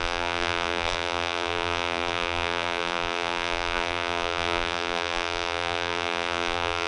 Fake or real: fake